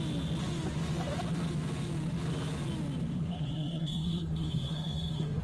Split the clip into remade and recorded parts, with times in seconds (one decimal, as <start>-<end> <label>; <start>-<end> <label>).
0.0-3.1 recorded; 3.1-5.4 remade